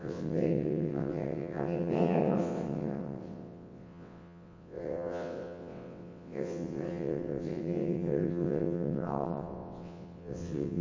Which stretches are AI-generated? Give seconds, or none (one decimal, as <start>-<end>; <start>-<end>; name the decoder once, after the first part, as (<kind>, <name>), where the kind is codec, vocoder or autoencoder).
0.0-10.8 (vocoder, WaveNeXt)